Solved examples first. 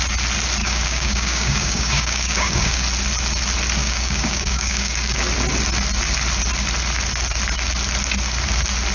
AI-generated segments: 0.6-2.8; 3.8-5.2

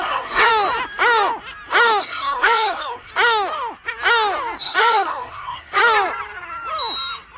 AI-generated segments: 0.0-0.5; 2.0-3.1; 4.6-5.8

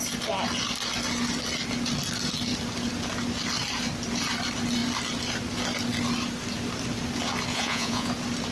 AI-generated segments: 7.5-8.1

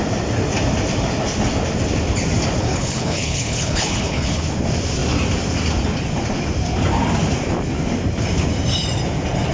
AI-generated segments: 2.6-4.4

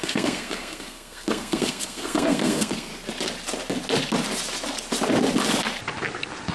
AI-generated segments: 0.0-2.9

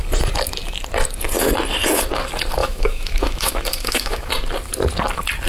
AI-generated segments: 2.6-4.3

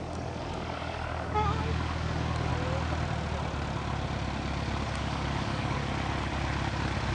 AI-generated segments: 0.0-2.5; 5.0-5.8